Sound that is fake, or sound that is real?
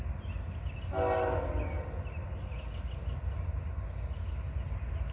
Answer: real